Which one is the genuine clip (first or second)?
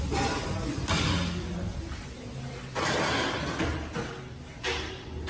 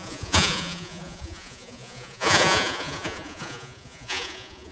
first